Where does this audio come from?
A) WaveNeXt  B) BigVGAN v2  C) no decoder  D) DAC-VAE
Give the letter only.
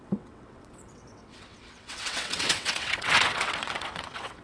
A